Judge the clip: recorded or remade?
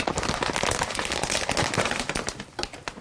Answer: recorded